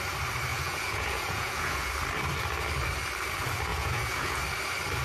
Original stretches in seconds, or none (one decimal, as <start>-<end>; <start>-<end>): 0.0-0.5; 1.9-3.7; 4.4-5.0